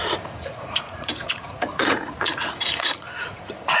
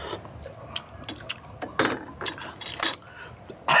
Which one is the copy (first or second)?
first